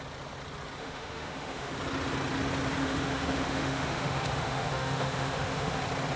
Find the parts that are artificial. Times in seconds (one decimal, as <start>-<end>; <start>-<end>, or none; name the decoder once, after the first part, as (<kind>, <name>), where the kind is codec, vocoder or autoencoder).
0.8-1.7 (autoencoder, DAC-VAE); 2.8-5.8